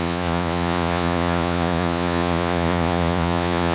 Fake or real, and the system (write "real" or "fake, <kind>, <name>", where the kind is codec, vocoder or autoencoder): fake, vocoder, Vocos